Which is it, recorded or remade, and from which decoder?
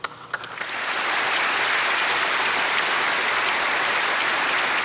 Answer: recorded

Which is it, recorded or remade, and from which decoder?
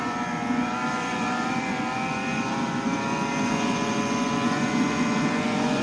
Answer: remade, vocoder, Vocos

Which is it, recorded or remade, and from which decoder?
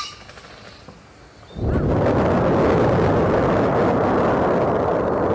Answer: recorded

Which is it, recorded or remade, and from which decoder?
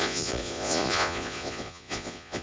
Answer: remade, vocoder, Vocos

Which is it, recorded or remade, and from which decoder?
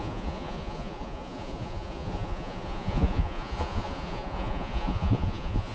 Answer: remade, vocoder, Vocos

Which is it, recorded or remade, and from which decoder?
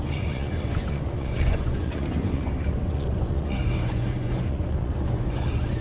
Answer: remade, vocoder, Vocos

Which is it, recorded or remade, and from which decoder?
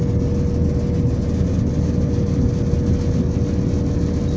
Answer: recorded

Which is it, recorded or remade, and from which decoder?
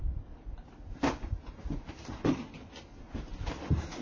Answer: recorded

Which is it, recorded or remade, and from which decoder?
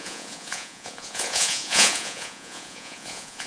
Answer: remade, vocoder, Vocos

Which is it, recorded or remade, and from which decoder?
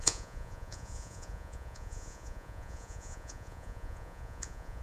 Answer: remade, vocoder, Vocos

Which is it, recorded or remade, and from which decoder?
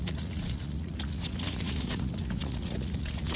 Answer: remade, vocoder, Vocos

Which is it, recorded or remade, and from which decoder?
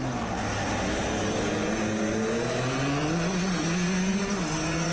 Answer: recorded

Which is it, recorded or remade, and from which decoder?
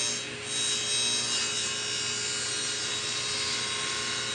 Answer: recorded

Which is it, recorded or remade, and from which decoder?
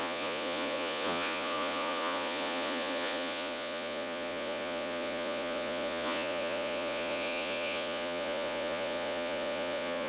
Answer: remade, vocoder, Vocos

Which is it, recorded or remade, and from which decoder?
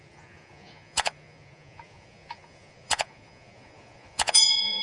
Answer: remade, vocoder, Vocos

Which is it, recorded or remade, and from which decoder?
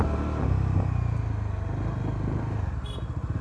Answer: recorded